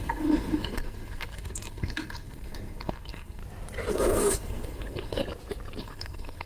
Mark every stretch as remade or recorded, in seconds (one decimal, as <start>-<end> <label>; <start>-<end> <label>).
0.0-3.4 remade; 3.4-3.9 recorded; 3.9-5.2 remade; 5.2-5.8 recorded; 5.8-6.5 remade